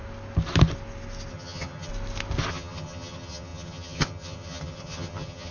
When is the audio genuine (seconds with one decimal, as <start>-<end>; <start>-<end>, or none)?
0.0-1.3; 1.9-2.5